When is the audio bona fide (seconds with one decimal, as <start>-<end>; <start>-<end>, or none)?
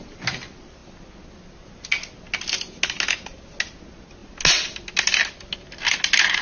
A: 0.0-6.4